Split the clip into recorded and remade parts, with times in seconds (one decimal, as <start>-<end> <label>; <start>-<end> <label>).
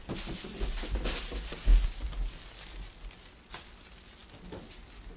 0.0-5.2 recorded